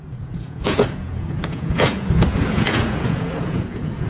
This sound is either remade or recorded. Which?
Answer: remade